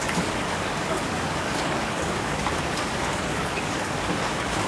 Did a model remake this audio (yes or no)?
yes